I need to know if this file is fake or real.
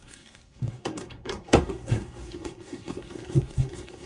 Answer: fake